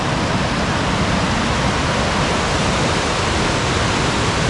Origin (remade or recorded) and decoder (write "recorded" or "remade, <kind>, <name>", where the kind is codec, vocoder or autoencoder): recorded